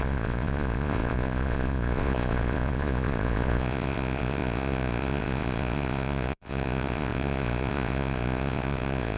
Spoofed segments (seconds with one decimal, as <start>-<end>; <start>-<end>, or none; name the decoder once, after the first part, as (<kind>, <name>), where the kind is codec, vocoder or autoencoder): 0.0-9.2 (vocoder, Vocos)